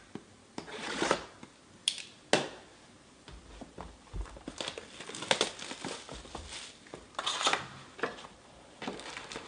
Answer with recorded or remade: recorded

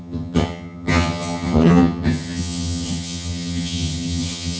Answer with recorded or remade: remade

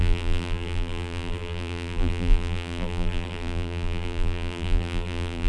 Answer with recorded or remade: remade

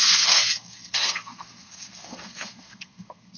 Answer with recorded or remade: remade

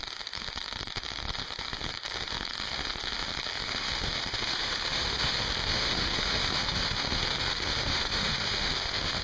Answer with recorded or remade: remade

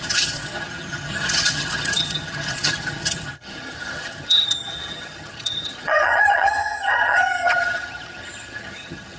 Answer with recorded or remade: remade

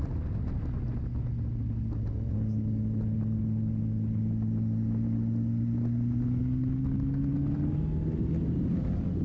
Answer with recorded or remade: recorded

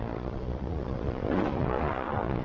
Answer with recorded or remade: remade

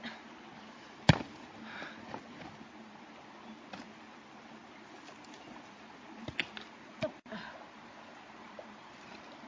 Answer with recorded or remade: recorded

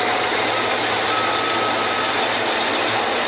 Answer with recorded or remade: recorded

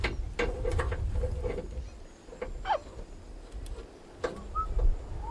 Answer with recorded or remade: recorded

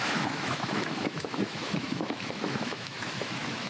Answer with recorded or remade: remade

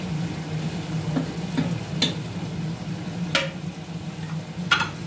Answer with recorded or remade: recorded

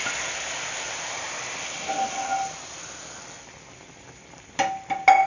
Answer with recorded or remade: recorded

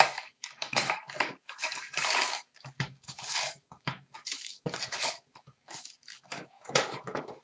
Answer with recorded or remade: remade